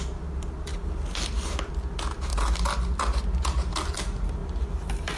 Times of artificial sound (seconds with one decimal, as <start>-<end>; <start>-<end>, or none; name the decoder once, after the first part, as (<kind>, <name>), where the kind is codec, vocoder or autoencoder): none